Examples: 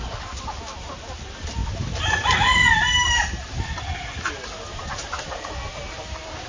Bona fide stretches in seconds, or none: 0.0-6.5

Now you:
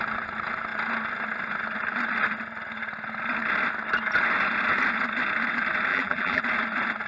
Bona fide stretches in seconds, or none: 0.0-5.9; 6.4-7.1